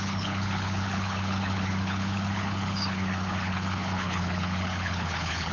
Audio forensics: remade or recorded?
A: remade